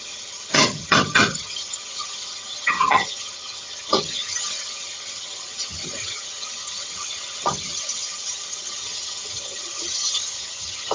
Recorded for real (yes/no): no